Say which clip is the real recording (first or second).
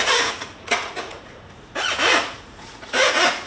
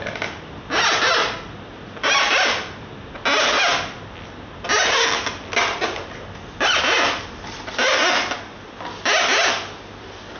second